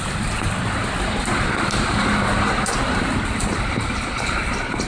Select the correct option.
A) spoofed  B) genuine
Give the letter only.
B